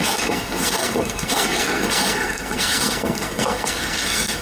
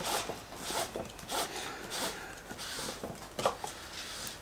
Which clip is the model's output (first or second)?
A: first